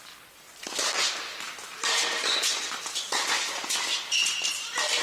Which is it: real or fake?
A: real